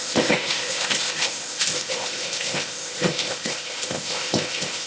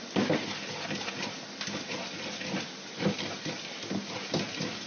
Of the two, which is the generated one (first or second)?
first